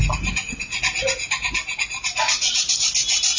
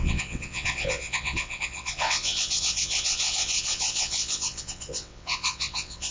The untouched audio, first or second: first